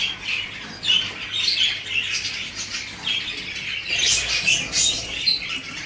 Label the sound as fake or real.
real